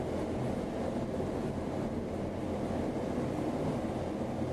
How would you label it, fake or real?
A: real